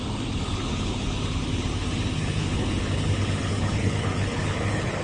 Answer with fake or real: fake